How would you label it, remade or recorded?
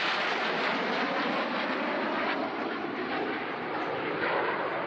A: remade